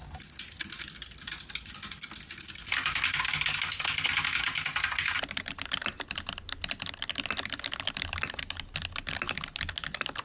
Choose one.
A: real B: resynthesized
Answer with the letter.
A